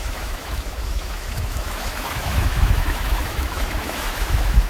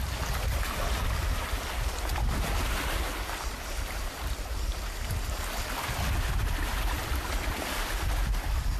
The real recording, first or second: second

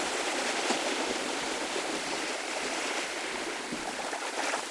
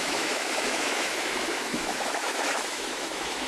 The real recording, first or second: first